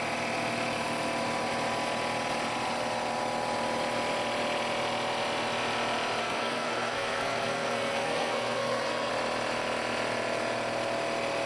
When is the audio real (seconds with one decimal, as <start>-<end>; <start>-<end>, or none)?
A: 0.0-6.2; 9.1-11.5